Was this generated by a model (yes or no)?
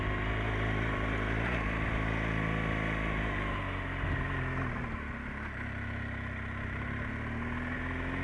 no